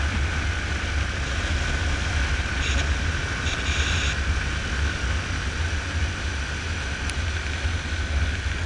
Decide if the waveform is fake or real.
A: real